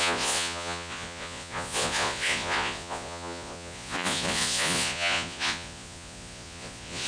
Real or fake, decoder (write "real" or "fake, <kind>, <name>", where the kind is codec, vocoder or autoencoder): fake, vocoder, Vocos